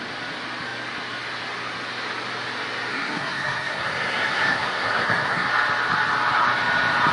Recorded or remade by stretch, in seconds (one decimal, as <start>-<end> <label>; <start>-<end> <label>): 0.0-2.9 recorded; 2.9-5.5 remade; 5.5-7.1 recorded